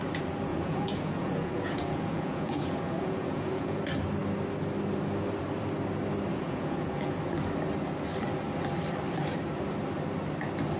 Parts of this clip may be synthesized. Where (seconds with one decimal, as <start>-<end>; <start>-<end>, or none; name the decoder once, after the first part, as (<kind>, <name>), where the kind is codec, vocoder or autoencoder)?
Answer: 0.5-3.8 (vocoder, Vocos); 6.3-7.2